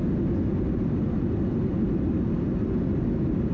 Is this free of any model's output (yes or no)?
yes